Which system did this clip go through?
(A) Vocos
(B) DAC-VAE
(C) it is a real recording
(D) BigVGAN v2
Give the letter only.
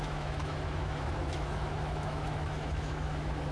B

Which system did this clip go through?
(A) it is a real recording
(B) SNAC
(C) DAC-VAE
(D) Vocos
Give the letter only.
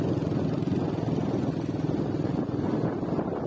A